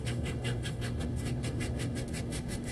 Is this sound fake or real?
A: fake